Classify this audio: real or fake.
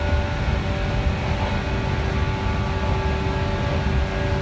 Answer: real